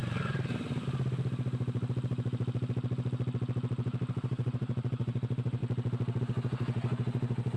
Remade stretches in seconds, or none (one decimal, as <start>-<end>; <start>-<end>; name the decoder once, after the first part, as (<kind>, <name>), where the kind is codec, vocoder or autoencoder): 4.2-5.6 (vocoder, Vocos); 6.2-7.6